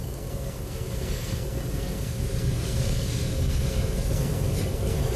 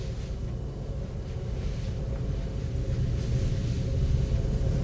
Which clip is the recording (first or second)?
second